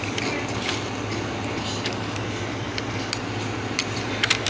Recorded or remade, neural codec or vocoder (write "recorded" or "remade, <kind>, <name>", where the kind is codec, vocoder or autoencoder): recorded